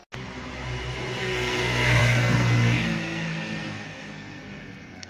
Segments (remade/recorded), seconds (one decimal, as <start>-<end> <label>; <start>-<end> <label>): 0.0-1.2 recorded; 1.2-5.1 remade